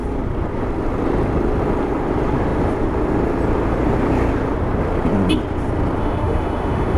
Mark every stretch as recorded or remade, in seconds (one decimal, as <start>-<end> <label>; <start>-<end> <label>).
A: 0.0-6.0 recorded; 6.0-7.0 remade